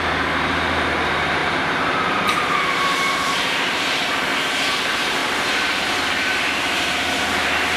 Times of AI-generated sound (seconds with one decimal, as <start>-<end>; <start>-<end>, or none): 0.0-4.3; 4.8-7.8